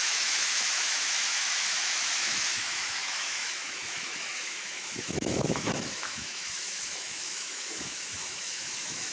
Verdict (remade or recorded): remade